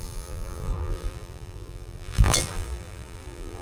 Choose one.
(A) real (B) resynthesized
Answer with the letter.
B